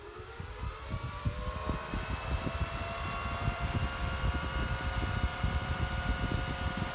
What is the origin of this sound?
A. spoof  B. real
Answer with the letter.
A